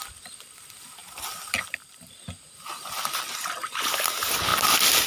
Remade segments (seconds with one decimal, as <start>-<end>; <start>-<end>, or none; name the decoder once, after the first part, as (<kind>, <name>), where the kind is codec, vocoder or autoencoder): none